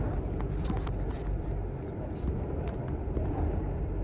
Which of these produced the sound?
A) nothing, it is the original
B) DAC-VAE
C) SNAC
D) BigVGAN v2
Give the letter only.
D